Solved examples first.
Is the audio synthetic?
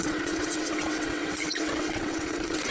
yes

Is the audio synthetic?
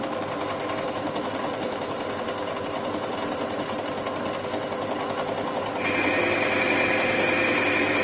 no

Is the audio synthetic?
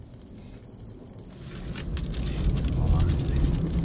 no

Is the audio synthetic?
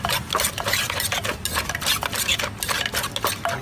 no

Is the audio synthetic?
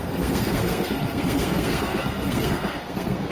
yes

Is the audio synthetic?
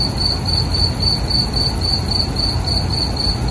no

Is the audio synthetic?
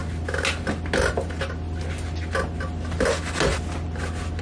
no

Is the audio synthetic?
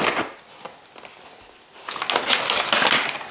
no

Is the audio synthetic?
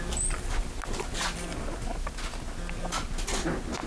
no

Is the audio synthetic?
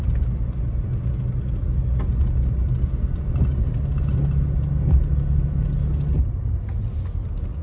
no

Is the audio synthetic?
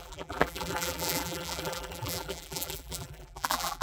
yes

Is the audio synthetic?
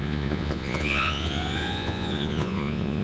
yes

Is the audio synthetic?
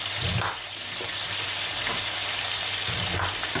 no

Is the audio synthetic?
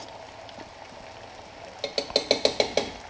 no